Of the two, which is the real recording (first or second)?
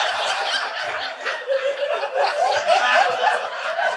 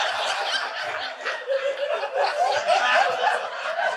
second